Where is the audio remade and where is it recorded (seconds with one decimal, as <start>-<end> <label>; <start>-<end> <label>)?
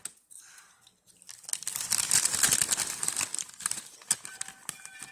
0.0-5.1 recorded